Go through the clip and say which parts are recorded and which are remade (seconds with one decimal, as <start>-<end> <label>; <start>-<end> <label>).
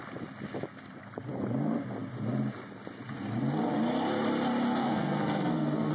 0.0-4.8 recorded; 4.8-5.9 remade